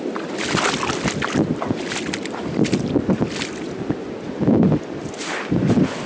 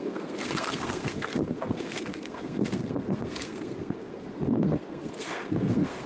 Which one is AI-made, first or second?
second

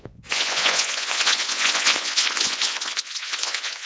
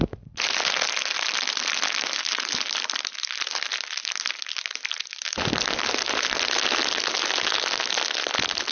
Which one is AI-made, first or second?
first